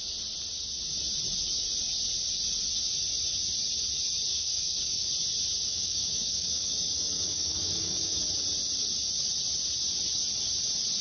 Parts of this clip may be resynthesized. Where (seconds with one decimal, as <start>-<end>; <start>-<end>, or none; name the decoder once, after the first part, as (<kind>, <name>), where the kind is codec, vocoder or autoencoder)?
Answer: 4.3-5.1 (codec, DAC); 5.7-8.2